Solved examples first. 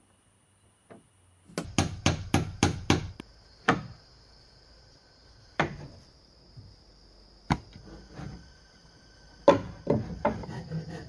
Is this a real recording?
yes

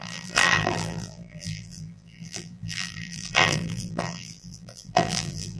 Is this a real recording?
no